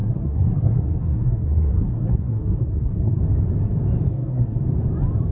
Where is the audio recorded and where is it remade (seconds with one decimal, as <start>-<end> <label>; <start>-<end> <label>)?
0.0-3.2 remade; 3.2-4.1 recorded; 4.1-4.6 remade; 4.6-5.3 recorded